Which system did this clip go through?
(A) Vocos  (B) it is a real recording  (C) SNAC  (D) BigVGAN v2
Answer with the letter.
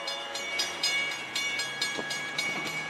D